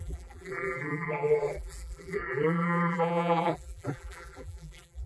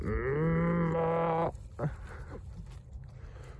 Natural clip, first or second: second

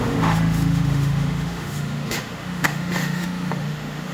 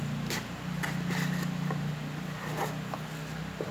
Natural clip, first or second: second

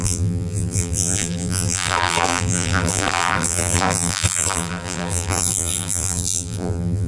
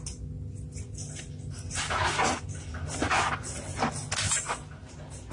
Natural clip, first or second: second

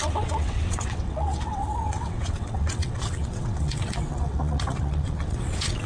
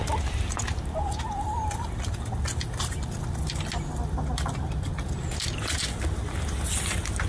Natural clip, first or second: second